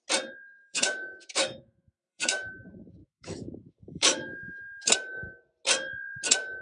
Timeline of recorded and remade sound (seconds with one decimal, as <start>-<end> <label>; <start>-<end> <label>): 0.0-0.6 recorded; 0.6-2.5 remade; 2.5-3.0 recorded; 3.0-4.9 remade; 4.9-6.6 recorded